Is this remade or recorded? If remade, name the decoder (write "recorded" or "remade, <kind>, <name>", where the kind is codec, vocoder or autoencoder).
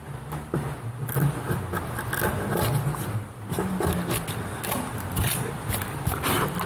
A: recorded